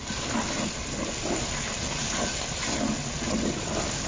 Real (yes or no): yes